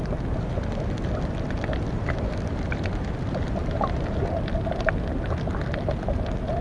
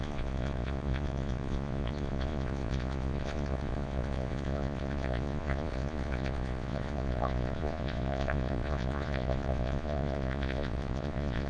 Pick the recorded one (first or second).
first